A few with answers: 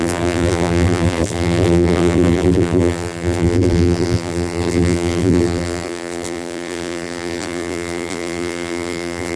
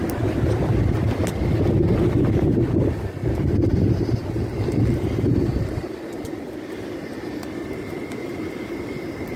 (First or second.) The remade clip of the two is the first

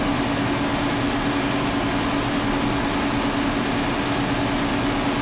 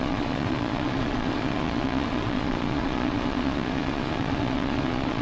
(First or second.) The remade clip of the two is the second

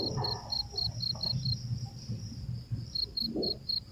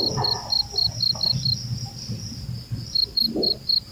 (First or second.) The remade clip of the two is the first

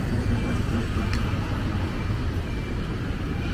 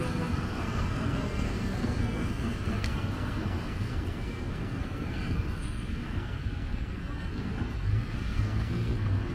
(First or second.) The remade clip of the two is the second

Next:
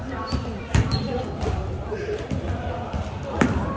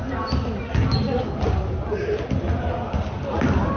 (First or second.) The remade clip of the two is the first